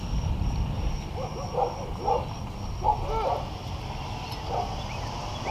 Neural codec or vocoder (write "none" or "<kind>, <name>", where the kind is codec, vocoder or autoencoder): none